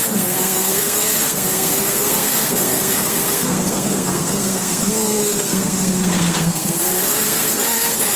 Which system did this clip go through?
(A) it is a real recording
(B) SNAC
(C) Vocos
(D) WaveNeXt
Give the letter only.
B